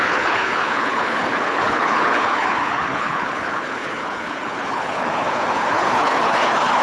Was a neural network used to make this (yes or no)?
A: yes